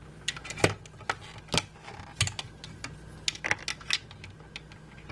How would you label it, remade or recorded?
recorded